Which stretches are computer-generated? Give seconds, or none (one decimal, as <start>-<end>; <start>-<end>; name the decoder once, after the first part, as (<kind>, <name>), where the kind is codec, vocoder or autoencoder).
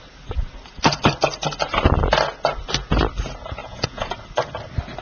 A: 3.6-4.1 (vocoder, Vocos)